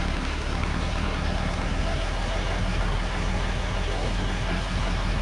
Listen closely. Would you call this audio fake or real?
fake